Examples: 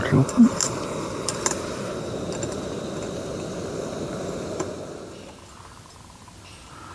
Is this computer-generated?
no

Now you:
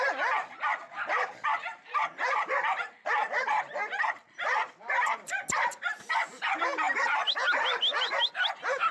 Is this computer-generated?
no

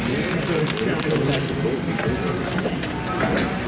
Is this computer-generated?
no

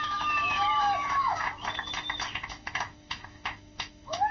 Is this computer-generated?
yes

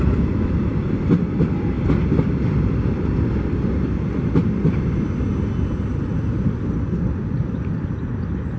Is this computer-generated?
no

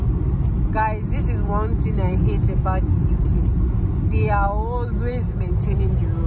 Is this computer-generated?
no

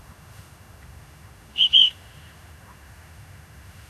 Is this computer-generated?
yes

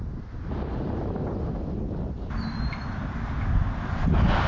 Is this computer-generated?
no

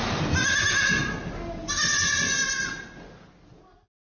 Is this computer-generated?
no